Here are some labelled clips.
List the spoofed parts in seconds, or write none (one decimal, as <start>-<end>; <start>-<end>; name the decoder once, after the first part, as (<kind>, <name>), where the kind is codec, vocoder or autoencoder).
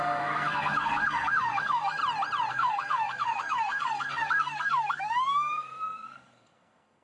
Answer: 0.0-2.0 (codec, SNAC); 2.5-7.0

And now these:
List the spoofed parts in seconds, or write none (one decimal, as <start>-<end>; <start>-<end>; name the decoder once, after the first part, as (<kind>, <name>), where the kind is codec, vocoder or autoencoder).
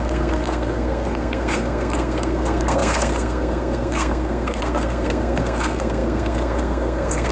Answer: 0.0-7.3 (codec, SNAC)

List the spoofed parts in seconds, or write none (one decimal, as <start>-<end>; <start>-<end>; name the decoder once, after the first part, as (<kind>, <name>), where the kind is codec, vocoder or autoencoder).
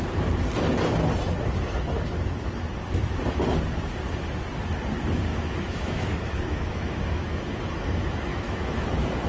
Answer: 5.3-7.6 (autoencoder, DAC-VAE); 8.3-8.9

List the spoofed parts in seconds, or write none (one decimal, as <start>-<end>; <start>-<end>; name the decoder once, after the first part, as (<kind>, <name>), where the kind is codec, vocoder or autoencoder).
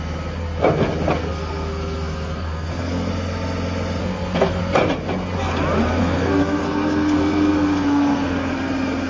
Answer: 1.2-3.1 (codec, SNAC); 4.0-4.6; 6.0-8.5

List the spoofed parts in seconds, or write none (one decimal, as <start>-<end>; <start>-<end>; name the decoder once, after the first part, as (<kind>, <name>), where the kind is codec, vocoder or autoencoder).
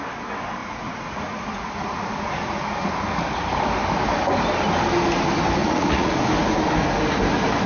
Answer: 0.6-2.9 (vocoder, Vocos); 5.6-6.1